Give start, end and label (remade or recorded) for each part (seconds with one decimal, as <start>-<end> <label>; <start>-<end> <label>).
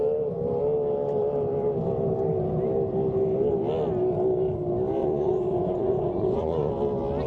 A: 0.0-5.0 recorded; 5.0-6.7 remade; 6.7-7.3 recorded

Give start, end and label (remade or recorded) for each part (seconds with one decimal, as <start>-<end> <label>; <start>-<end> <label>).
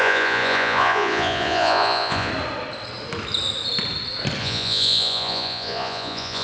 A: 0.0-2.3 remade; 2.3-4.4 recorded; 4.4-6.4 remade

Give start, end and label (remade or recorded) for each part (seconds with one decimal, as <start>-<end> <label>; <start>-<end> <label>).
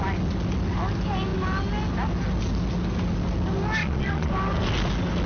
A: 0.0-3.8 recorded; 3.8-4.3 remade; 4.3-5.3 recorded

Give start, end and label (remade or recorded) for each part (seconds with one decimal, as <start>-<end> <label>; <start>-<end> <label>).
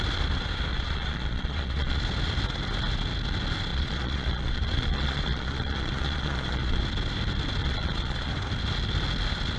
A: 0.0-0.7 recorded; 0.7-2.0 remade; 2.0-3.7 recorded; 3.7-6.8 remade; 6.8-7.6 recorded; 7.6-8.3 remade; 8.3-9.6 recorded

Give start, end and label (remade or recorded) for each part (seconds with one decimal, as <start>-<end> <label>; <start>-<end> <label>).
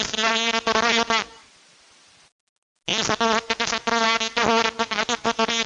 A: 0.0-5.7 recorded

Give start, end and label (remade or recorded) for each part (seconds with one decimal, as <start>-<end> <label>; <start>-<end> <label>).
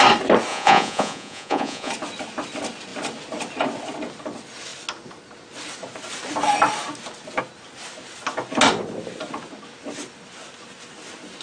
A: 0.0-0.5 recorded; 0.5-1.9 remade; 1.9-11.4 recorded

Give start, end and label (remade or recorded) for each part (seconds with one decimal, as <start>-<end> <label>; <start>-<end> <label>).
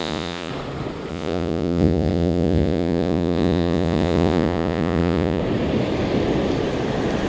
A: 0.0-0.5 remade; 0.5-1.1 recorded; 1.1-5.4 remade; 5.4-7.3 recorded